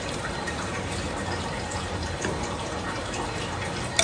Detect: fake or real real